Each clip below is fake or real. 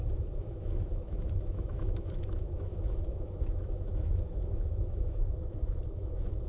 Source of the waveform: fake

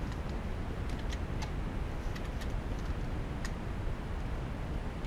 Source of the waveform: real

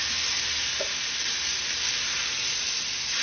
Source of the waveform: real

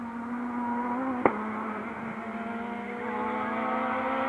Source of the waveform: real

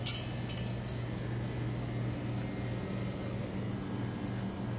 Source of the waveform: real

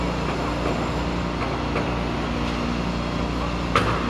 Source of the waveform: real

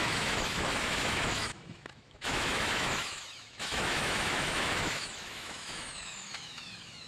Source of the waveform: fake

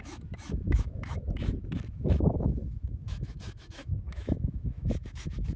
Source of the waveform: fake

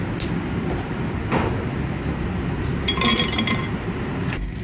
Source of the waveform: real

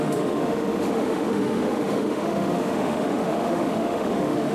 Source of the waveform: fake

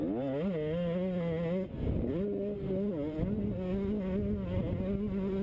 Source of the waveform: real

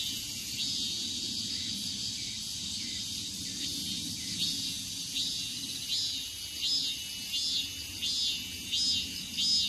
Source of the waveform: real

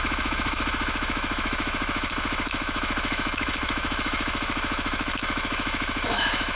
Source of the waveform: fake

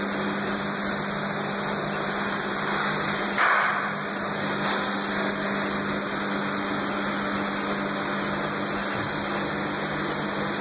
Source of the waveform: real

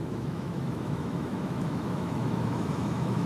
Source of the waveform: fake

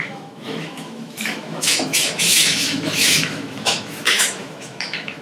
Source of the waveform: fake